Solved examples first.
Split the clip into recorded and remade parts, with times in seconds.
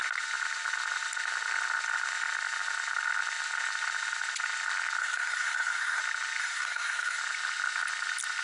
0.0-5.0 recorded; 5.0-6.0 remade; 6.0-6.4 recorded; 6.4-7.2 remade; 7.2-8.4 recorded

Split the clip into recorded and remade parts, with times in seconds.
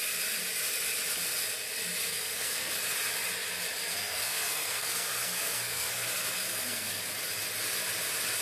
0.0-2.1 recorded; 2.1-2.7 remade; 2.7-3.8 recorded; 3.8-7.0 remade; 7.0-8.4 recorded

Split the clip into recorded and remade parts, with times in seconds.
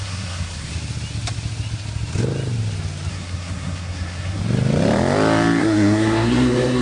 0.0-0.7 remade; 0.7-3.1 recorded; 3.1-4.4 remade; 4.4-5.6 recorded; 5.6-6.8 remade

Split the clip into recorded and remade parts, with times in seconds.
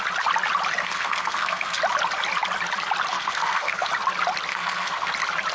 0.0-0.8 recorded; 0.8-1.8 remade; 1.8-3.1 recorded; 3.1-3.9 remade; 3.9-4.5 recorded; 4.5-5.1 remade; 5.1-5.5 recorded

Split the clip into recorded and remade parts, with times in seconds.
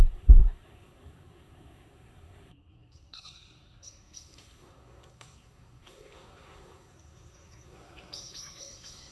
0.0-9.1 remade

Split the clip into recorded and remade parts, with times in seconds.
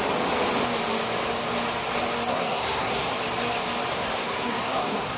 0.0-2.3 recorded; 2.3-3.2 remade; 3.2-3.9 recorded; 3.9-5.2 remade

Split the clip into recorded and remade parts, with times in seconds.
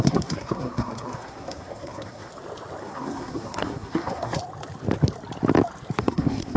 0.0-2.3 remade; 2.3-2.8 recorded; 2.8-4.4 remade; 4.4-6.0 recorded; 6.0-6.6 remade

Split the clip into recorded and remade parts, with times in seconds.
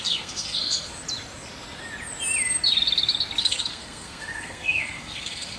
0.0-0.9 remade; 0.9-3.4 recorded; 3.4-5.6 remade